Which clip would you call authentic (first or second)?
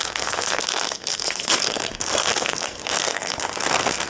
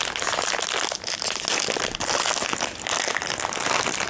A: second